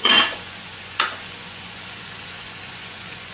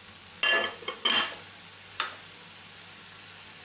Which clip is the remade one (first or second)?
first